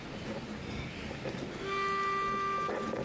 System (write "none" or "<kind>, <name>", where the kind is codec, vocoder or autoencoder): none